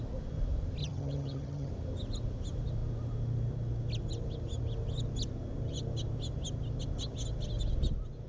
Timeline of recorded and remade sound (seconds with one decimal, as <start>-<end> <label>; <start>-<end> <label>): 0.0-0.8 recorded; 0.8-1.7 remade; 1.7-8.3 recorded